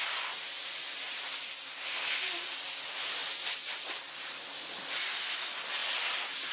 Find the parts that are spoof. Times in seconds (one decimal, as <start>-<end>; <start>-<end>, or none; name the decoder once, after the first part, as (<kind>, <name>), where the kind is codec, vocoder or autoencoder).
none